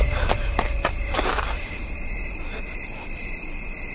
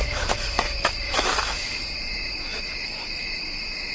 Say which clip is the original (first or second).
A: first